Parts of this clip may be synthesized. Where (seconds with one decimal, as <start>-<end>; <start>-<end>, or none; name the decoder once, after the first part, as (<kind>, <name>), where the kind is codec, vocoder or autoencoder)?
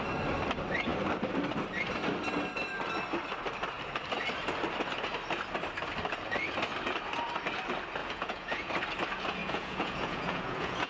8.0-8.7 (vocoder, Vocos); 9.4-10.9